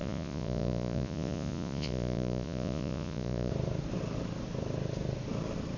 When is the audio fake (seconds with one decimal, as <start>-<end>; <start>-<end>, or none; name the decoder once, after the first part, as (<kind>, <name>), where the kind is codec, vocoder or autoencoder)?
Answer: 0.0-3.5 (vocoder, Vocos)